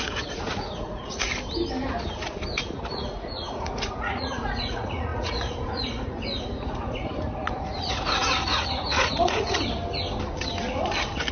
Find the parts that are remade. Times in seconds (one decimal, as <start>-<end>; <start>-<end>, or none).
0.0-1.3; 2.9-9.8